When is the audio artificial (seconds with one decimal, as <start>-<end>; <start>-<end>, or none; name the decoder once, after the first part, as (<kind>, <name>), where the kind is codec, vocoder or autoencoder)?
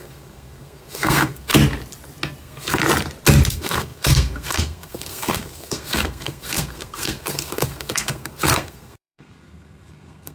0.0-1.5 (codec, SNAC); 2.4-2.8; 3.5-10.3